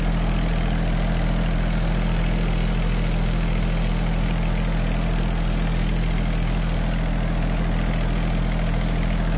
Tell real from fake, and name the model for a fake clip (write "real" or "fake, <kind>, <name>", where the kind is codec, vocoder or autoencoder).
real